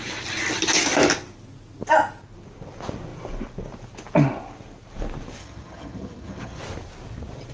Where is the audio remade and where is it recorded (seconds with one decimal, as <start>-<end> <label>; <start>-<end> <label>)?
0.0-5.4 recorded; 5.4-6.6 remade; 6.6-7.5 recorded